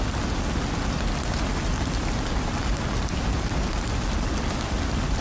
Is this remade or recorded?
recorded